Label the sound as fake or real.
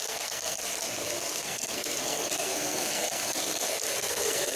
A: fake